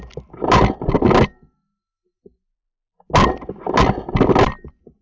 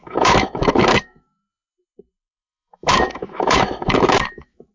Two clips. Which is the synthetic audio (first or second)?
second